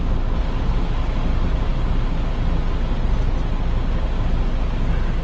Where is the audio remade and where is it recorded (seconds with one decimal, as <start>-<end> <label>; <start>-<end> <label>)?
0.0-5.2 recorded